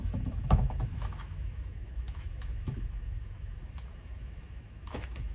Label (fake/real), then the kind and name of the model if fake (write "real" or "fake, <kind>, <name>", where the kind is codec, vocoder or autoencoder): fake, autoencoder, DAC-VAE